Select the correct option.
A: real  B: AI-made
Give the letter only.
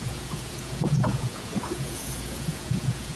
B